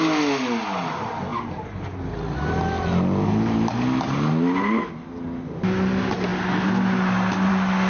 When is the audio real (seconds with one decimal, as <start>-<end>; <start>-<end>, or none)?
0.0-7.9